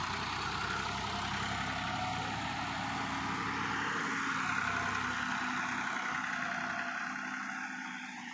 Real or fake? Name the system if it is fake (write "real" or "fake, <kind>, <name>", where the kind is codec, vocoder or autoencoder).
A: real